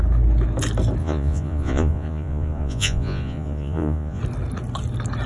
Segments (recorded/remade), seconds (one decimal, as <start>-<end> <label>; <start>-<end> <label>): 0.0-1.0 recorded; 1.0-4.2 remade; 4.2-5.3 recorded